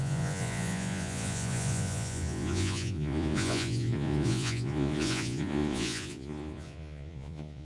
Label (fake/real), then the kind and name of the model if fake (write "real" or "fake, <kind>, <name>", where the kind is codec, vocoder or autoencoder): fake, vocoder, Vocos